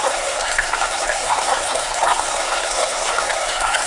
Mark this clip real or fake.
fake